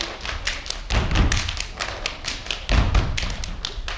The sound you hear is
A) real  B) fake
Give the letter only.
A